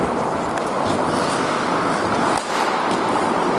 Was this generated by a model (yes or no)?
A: no